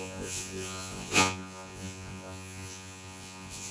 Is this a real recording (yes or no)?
no